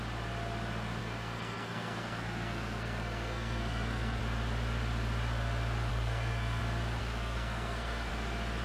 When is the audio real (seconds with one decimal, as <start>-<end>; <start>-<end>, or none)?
0.0-1.0; 4.2-5.9; 6.6-7.0; 8.1-8.6